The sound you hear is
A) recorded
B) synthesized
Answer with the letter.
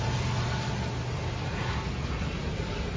A